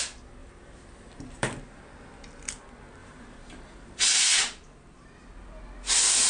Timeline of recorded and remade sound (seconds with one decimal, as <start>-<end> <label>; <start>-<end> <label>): 0.0-0.4 recorded; 0.4-1.8 remade; 1.8-3.0 recorded; 3.0-5.1 remade; 5.1-6.3 recorded